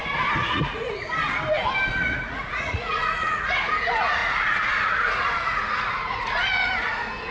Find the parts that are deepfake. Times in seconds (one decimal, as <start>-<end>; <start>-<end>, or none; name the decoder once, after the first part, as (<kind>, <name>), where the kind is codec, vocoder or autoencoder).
0.4-1.1 (vocoder, Vocos); 2.0-3.7; 4.2-6.7